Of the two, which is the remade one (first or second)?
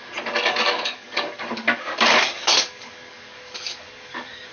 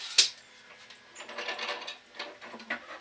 first